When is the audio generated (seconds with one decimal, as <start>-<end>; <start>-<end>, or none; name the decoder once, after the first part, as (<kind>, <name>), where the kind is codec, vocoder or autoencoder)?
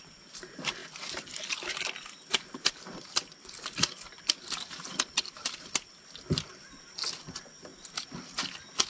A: 0.8-1.6 (vocoder, BigVGAN v2); 2.4-6.7; 7.7-8.9